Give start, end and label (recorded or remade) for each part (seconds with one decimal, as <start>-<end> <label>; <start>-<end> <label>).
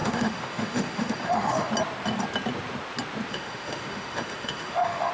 0.0-1.7 remade; 1.7-3.3 recorded; 3.3-5.1 remade